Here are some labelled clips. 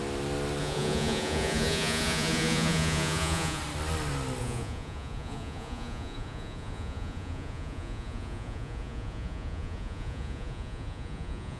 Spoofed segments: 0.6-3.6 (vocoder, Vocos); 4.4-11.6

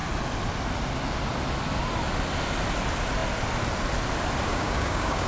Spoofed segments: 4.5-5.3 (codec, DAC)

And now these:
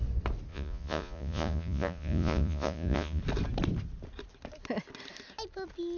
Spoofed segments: 0.5-3.2 (vocoder, Vocos)

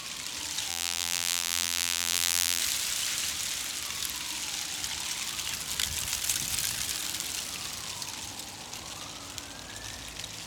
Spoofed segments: 0.7-2.6 (vocoder, BigVGAN v2)

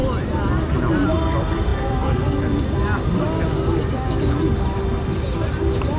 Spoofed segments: none

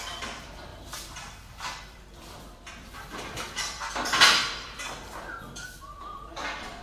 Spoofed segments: 0.0-6.8 (vocoder, BigVGAN v2)

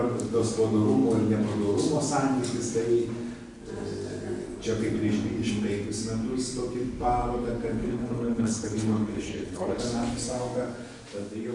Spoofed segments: 7.8-9.8 (codec, HILCodec)

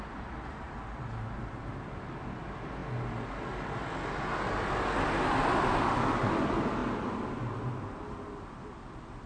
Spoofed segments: none